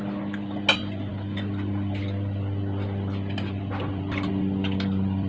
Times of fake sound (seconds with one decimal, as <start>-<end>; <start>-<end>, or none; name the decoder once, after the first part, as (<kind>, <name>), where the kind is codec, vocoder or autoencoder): none